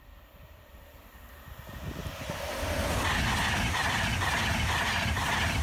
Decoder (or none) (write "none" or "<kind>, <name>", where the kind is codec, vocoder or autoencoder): vocoder, BigVGAN v2